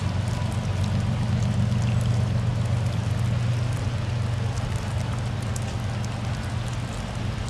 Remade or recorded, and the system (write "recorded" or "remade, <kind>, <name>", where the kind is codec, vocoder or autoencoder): recorded